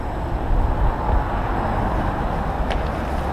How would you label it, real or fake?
real